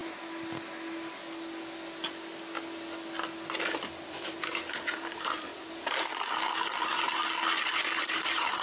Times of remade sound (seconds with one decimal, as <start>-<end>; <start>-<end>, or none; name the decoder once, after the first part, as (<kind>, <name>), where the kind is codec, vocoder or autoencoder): 4.0-7.2 (vocoder, BigVGAN v2); 8.0-8.6